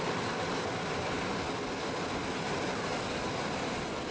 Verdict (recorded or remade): recorded